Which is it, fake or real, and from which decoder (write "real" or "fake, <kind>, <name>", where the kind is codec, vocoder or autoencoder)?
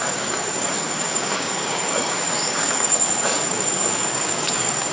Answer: fake, codec, DAC